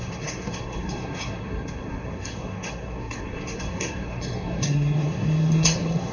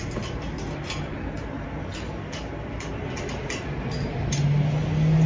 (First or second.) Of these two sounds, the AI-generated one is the first